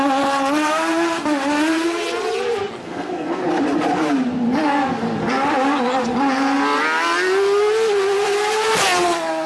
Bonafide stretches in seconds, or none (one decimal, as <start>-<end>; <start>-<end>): 0.0-2.8; 3.4-9.5